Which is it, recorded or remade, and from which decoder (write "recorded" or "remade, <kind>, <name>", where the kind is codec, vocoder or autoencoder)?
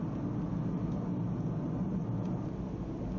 recorded